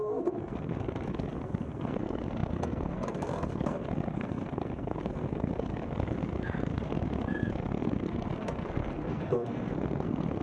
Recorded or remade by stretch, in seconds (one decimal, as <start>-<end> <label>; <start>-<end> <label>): 0.0-10.4 remade